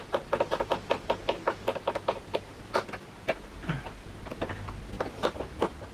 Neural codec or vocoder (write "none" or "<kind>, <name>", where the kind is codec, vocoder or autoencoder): none